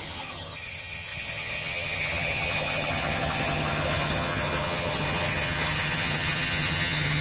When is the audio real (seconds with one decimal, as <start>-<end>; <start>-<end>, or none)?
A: none